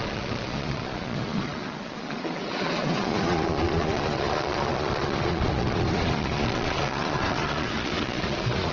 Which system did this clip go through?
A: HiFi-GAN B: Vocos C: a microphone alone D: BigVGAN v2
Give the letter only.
B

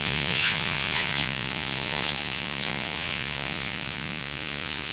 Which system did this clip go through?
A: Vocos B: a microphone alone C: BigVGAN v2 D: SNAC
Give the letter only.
A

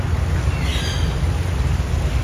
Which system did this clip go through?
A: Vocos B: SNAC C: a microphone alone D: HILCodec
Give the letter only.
C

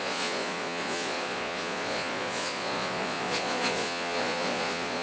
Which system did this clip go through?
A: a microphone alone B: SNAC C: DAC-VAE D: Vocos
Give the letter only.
D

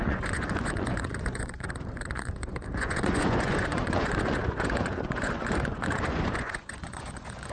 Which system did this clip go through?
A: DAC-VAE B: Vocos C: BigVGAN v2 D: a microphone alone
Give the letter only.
B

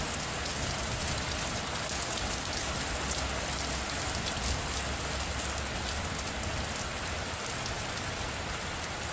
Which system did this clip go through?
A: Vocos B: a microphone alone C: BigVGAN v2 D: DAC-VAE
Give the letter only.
B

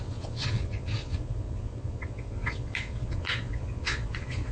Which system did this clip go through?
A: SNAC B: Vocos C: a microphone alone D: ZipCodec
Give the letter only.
B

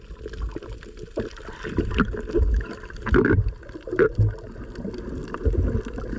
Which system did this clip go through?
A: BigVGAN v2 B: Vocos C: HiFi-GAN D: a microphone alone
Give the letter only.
D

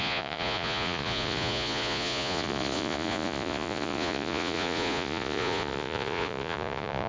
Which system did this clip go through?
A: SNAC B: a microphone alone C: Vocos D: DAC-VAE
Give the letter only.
C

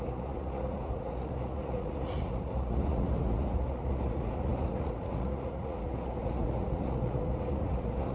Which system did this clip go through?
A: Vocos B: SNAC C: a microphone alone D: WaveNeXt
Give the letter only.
A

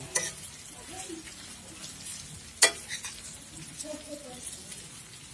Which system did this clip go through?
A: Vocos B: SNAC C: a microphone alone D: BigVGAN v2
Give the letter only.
C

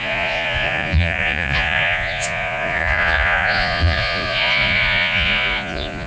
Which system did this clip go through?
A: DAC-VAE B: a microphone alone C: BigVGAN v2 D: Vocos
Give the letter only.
D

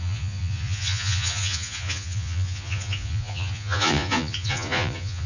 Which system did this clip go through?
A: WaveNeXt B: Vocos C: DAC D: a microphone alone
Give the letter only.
B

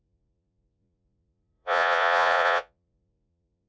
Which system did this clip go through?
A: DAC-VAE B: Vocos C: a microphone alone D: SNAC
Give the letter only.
B